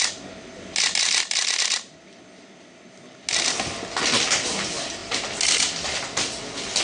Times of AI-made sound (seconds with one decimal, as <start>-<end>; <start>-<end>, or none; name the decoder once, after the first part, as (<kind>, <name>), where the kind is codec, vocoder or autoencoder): none